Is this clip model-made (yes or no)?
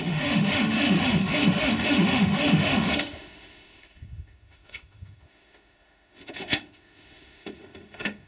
yes